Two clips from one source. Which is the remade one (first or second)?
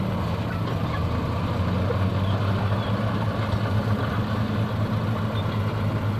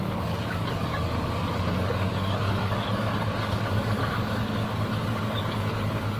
second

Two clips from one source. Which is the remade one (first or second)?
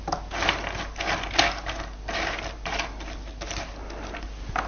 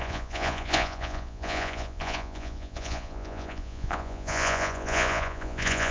second